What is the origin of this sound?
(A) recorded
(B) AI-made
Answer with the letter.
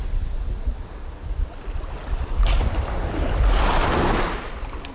A